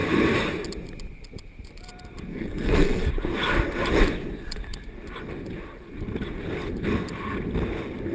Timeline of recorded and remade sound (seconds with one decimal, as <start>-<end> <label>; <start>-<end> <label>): 0.0-2.3 recorded; 2.3-3.1 remade; 3.1-8.1 recorded